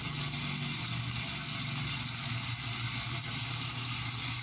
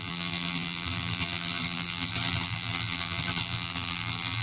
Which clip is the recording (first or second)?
first